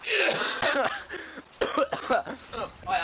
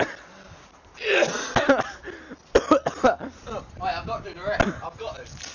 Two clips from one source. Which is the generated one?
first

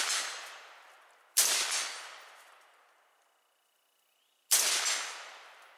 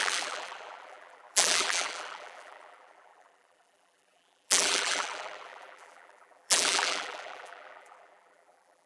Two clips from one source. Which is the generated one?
second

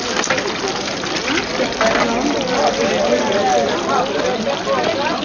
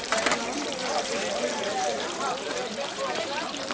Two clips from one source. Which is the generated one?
second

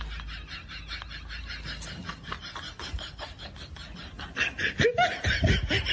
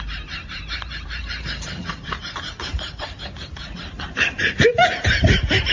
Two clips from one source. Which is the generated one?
second